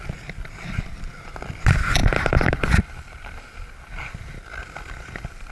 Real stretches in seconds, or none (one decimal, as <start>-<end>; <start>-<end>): 0.0-2.0; 3.4-5.5